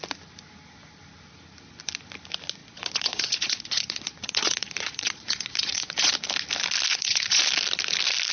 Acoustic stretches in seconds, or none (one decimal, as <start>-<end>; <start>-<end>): 0.0-2.6; 6.1-6.9; 7.4-8.3